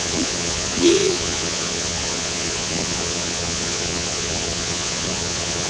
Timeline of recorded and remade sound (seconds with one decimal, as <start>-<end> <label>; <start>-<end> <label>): 0.0-5.7 remade

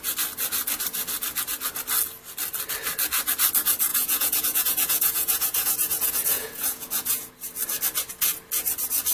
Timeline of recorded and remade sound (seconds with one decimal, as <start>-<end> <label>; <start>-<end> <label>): 0.0-3.9 recorded; 3.9-7.3 remade; 7.3-9.1 recorded

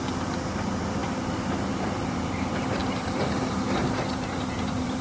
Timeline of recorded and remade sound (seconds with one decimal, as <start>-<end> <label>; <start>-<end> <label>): 0.0-2.8 recorded; 2.8-3.4 remade; 3.4-3.8 recorded; 3.8-5.0 remade

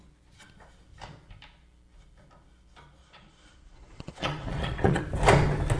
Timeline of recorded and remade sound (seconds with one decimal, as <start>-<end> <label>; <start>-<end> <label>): 0.0-3.0 recorded; 3.0-5.0 remade; 5.0-5.8 recorded

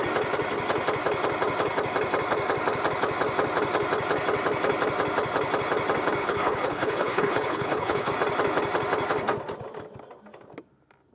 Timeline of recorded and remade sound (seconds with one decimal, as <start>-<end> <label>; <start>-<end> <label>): 0.0-6.2 recorded; 6.2-8.1 remade; 8.1-11.1 recorded

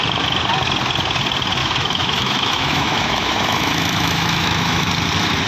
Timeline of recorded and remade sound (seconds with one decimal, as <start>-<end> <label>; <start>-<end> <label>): 0.0-1.6 recorded; 1.6-4.9 remade; 4.9-5.5 recorded